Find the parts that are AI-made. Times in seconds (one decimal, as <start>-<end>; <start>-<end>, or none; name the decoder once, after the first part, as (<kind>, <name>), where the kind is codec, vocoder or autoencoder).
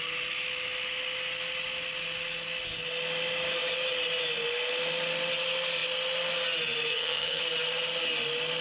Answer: 6.9-7.4 (vocoder, HiFi-GAN)